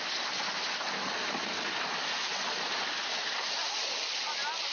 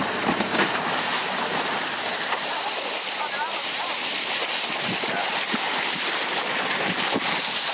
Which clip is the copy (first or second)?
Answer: second